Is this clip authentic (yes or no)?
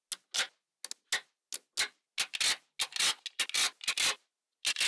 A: yes